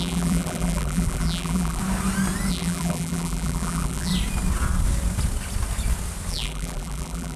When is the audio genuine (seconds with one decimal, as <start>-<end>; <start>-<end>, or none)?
1.8-2.5; 4.1-6.3